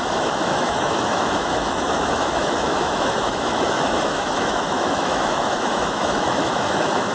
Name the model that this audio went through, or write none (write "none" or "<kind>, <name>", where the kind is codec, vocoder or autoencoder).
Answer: autoencoder, DAC-VAE